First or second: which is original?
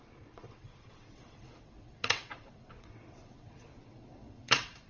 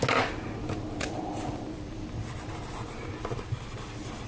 second